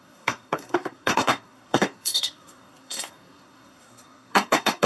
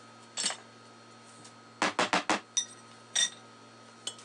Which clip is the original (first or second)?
second